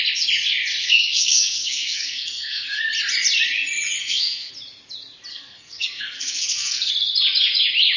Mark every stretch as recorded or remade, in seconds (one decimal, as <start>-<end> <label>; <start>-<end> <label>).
0.0-0.8 recorded; 0.8-2.8 remade; 2.8-4.0 recorded; 4.0-4.5 remade; 4.5-5.3 recorded; 5.3-6.9 remade; 6.9-8.0 recorded